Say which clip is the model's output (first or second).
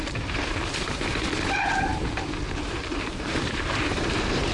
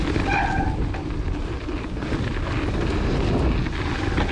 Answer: first